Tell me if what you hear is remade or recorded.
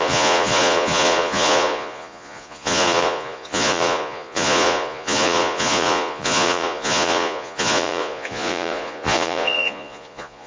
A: remade